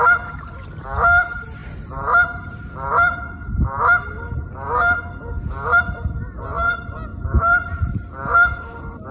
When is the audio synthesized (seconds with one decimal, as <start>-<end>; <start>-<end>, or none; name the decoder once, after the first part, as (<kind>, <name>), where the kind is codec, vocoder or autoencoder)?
none